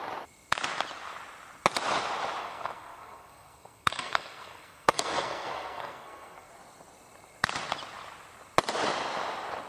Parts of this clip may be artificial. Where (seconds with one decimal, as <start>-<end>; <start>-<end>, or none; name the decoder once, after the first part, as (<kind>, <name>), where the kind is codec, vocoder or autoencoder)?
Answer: 2.4-6.5 (codec, SNAC)